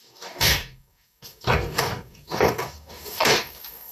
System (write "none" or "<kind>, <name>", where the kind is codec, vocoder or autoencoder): codec, DAC